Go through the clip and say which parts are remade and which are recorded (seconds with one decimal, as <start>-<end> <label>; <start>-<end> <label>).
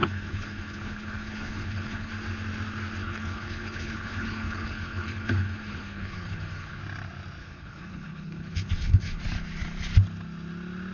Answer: 0.0-2.1 remade; 2.1-3.0 recorded; 3.0-6.8 remade; 6.8-7.4 recorded; 7.4-9.2 remade; 9.2-10.9 recorded